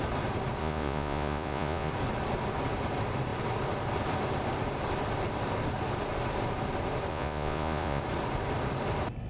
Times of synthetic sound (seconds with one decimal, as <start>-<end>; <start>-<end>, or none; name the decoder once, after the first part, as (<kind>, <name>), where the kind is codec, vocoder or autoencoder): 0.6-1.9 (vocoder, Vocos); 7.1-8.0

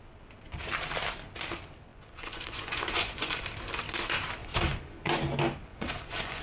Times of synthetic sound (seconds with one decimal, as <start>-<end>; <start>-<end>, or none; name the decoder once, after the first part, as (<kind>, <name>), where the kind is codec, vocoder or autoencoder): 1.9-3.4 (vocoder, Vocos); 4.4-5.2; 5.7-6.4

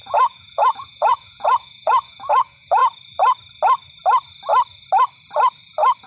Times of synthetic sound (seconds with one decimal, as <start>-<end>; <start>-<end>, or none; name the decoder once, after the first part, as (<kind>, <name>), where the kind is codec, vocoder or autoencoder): 0.0-2.8 (vocoder, Vocos)

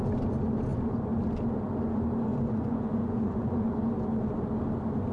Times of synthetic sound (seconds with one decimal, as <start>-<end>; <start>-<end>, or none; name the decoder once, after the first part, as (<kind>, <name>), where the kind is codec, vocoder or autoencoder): 2.3-3.7 (vocoder, Vocos)